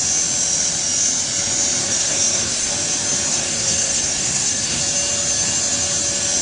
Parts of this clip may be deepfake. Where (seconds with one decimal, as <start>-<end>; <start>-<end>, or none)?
1.8-2.7; 3.3-4.8